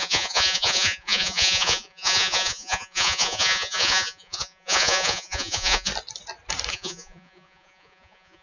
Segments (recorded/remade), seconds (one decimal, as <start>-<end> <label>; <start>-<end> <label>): 0.0-5.9 remade; 5.9-6.7 recorded; 6.7-8.4 remade